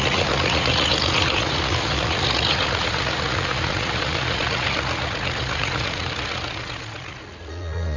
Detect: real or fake fake